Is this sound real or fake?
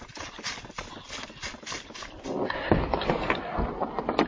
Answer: real